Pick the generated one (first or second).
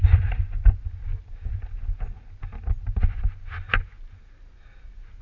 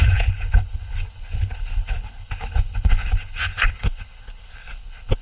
second